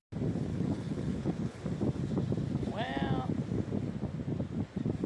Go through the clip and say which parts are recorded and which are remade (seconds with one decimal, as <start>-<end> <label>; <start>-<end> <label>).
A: 0.0-0.5 recorded; 0.5-1.6 remade; 1.6-5.1 recorded